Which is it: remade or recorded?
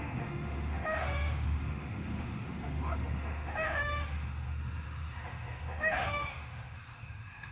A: remade